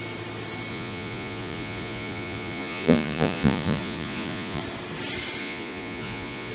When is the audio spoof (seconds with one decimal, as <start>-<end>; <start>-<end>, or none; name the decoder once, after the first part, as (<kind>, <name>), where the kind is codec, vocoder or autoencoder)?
0.7-4.6 (vocoder, Vocos); 5.4-6.5